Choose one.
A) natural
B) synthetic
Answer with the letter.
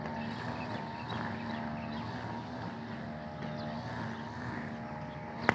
A